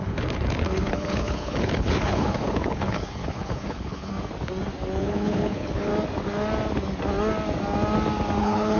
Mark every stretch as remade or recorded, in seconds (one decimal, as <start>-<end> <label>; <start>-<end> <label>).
0.0-4.1 remade; 4.1-5.0 recorded; 5.0-5.9 remade; 5.9-8.4 recorded; 8.4-8.8 remade